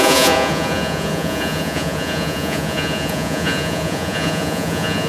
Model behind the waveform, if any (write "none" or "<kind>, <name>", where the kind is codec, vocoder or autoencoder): vocoder, Vocos